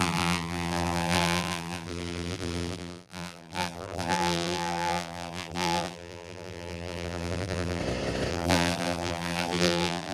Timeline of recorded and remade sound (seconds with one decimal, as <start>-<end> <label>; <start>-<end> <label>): 0.0-7.8 remade; 7.8-8.3 recorded; 8.3-10.1 remade